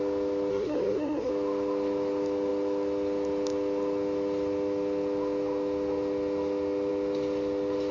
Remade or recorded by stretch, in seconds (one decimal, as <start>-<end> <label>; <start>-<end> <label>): 0.0-0.5 recorded; 0.5-1.3 remade; 1.3-7.9 recorded